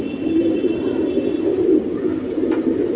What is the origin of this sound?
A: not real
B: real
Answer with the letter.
B